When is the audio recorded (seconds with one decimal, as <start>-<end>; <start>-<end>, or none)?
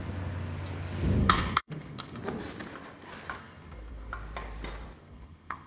0.0-1.2; 2.2-3.4; 4.1-5.0